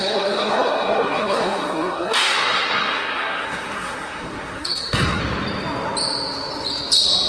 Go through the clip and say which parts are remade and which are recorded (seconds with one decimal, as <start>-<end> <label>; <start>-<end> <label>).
0.0-5.2 remade; 5.2-7.3 recorded